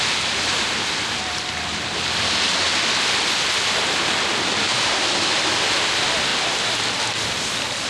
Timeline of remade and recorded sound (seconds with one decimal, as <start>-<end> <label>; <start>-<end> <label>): 0.0-4.7 recorded; 4.7-5.5 remade; 5.5-7.9 recorded